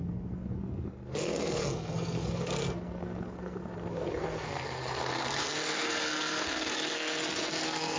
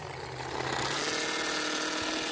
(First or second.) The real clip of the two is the second